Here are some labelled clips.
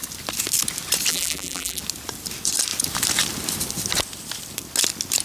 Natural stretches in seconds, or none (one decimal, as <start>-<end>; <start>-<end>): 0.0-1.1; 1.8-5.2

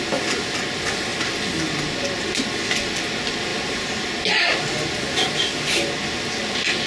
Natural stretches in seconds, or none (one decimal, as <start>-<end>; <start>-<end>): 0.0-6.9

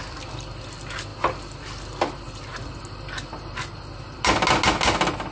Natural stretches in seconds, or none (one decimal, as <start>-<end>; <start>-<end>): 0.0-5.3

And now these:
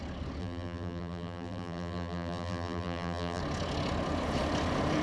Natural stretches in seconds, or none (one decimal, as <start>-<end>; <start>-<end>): 0.0-0.4; 3.4-5.0

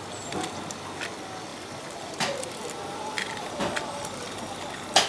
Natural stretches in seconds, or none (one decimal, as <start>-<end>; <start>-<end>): 0.0-1.5; 4.6-5.1

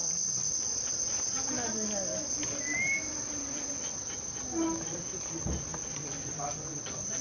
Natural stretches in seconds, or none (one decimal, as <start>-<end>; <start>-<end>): none

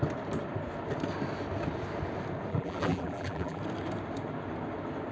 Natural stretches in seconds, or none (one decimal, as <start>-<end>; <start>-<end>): 0.0-2.5; 3.6-5.1